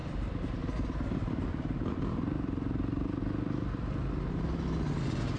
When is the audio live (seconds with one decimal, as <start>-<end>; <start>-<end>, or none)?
0.0-5.4